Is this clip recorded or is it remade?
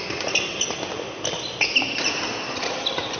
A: recorded